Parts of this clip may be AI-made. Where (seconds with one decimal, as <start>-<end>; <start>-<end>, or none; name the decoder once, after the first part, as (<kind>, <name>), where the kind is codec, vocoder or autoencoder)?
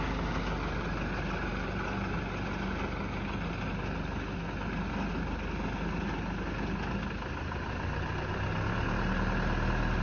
none